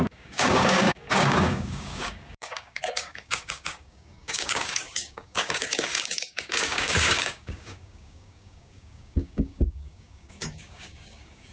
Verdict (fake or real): fake